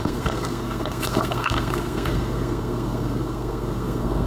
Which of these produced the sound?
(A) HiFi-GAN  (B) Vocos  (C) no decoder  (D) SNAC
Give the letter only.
D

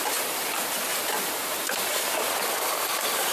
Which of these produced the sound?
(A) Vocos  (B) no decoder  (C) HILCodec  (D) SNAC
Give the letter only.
B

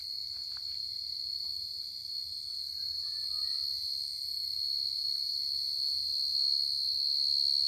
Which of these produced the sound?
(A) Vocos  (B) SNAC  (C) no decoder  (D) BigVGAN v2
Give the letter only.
C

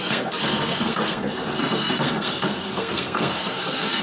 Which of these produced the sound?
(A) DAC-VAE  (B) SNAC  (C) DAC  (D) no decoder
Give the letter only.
B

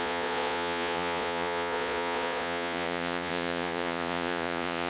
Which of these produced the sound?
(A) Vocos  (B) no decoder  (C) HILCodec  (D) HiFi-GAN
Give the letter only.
A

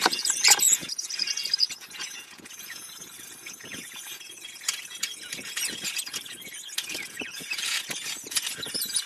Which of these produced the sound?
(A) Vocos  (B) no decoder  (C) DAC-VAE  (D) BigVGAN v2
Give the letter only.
A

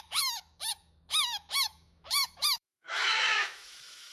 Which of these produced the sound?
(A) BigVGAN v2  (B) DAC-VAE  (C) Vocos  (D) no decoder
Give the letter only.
B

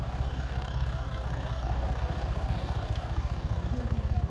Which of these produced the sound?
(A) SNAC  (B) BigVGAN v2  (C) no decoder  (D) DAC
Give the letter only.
D